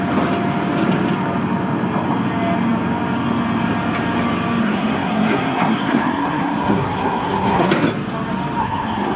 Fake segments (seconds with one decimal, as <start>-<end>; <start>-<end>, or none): 4.6-7.7; 8.6-9.2